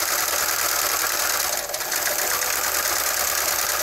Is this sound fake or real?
real